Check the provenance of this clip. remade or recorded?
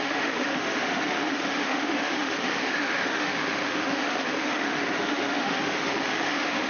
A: remade